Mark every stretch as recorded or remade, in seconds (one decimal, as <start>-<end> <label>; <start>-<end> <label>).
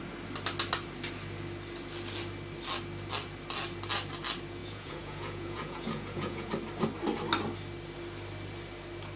0.0-4.6 recorded; 4.6-6.5 remade; 6.5-9.2 recorded